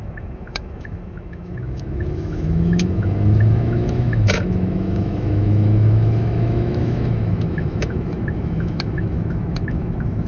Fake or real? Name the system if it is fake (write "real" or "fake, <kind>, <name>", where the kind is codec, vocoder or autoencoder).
fake, autoencoder, DAC-VAE